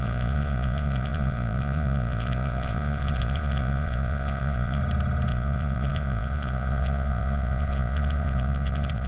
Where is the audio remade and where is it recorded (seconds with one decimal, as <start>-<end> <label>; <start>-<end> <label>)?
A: 0.0-4.8 remade; 4.8-5.3 recorded; 5.3-9.1 remade